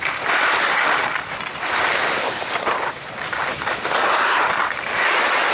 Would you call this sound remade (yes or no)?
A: no